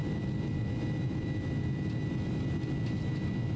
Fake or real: real